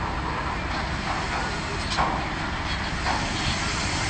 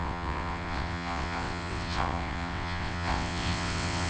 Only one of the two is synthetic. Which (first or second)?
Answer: second